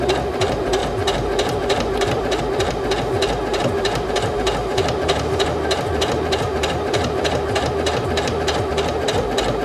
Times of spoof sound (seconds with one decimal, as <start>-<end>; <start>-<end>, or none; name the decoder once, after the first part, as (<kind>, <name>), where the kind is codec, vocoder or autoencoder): 0.8-2.4 (vocoder, BigVGAN v2); 3.5-8.6

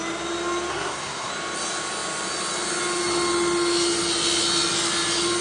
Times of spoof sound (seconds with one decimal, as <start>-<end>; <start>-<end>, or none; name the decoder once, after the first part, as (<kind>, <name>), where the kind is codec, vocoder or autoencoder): 0.7-1.3 (codec, SNAC)